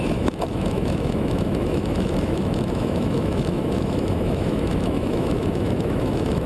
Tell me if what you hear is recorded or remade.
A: remade